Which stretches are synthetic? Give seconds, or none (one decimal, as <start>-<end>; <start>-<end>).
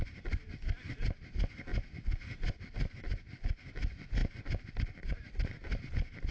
none